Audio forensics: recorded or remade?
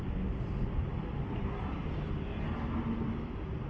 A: recorded